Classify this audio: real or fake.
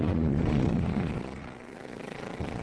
fake